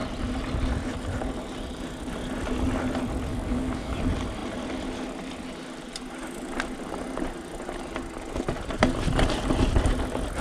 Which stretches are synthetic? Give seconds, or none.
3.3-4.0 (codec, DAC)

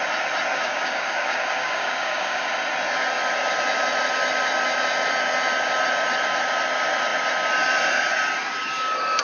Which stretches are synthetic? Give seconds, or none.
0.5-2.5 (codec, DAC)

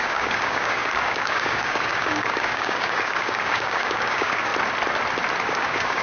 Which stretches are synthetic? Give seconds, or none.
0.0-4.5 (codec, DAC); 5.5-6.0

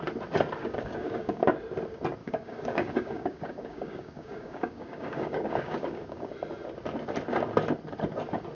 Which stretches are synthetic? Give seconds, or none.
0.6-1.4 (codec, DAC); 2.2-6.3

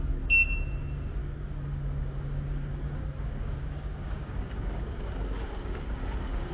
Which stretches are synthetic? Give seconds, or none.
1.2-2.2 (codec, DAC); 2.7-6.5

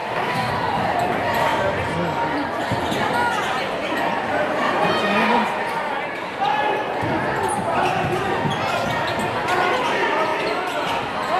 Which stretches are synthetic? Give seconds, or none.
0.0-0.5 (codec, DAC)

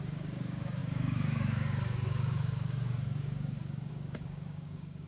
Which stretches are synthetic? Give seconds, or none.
0.0-5.1 (codec, DAC)

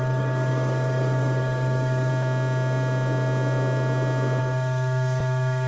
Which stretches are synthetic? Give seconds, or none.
0.0-2.1 (codec, DAC); 4.4-5.7